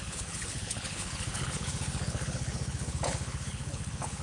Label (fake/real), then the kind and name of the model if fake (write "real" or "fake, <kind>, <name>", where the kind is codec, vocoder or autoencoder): fake, codec, HILCodec